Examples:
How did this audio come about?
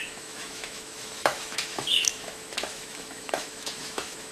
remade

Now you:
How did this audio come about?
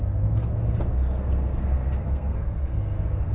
remade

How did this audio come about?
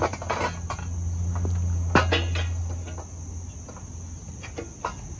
recorded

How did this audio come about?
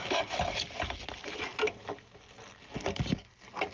recorded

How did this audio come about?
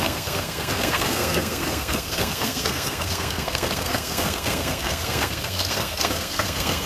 remade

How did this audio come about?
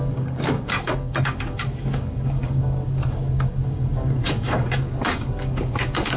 remade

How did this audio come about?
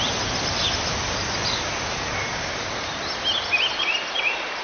recorded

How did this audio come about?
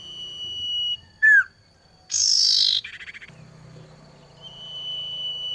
recorded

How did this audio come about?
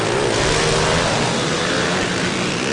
recorded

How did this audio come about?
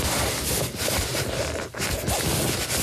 recorded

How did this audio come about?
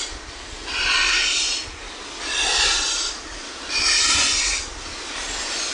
recorded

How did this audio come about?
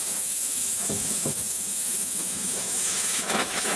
remade